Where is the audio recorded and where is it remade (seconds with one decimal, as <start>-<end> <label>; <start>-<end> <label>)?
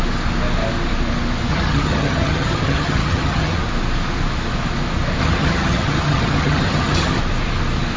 0.0-1.5 recorded; 1.5-3.6 remade; 3.6-5.2 recorded; 5.2-7.2 remade; 7.2-8.0 recorded